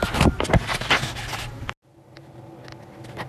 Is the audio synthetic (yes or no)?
no